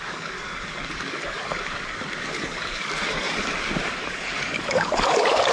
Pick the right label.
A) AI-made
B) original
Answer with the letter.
A